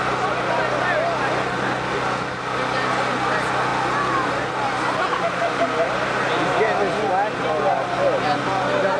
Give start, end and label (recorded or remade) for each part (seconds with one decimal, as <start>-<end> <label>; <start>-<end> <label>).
0.0-9.0 recorded